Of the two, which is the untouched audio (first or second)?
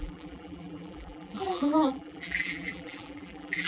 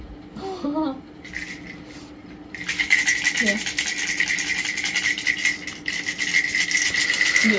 second